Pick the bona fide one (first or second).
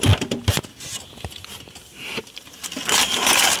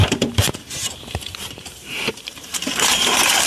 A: first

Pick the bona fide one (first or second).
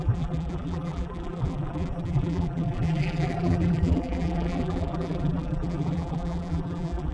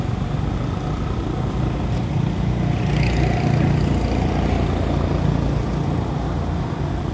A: second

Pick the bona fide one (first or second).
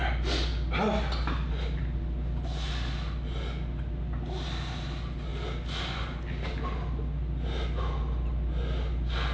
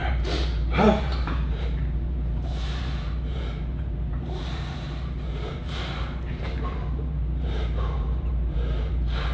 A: first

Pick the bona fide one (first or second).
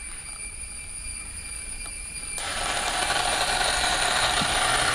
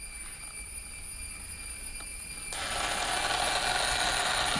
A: second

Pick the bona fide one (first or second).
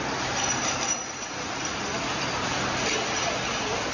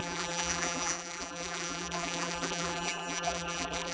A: first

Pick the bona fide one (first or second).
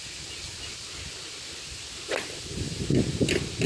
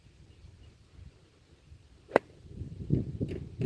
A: first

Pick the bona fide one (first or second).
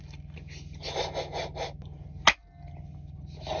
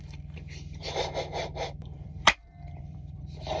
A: first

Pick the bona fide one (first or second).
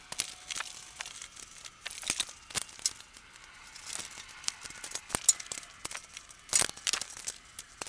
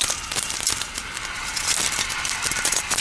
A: first